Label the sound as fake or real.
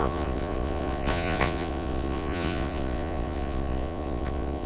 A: fake